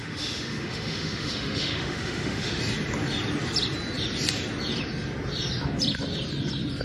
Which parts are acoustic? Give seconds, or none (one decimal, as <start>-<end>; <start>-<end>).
2.6-6.8